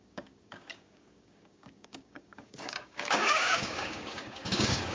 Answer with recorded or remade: remade